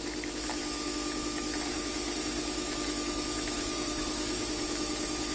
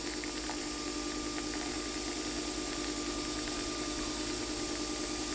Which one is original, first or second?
second